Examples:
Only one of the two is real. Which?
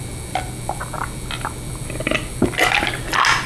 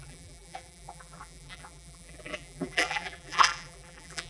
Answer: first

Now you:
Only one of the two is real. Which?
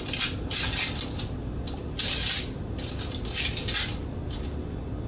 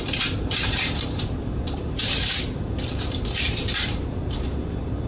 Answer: first